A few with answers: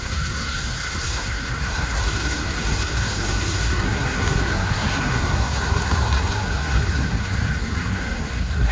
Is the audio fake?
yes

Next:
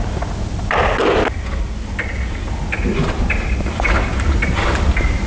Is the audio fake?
no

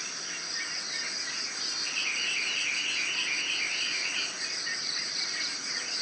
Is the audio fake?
no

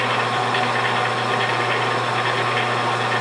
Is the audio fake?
no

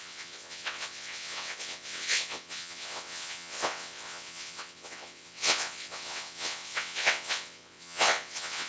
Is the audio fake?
yes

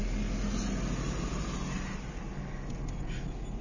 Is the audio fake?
no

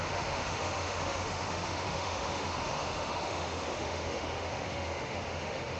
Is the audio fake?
yes